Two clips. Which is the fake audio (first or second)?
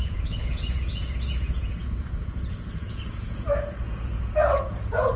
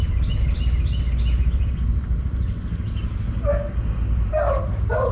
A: first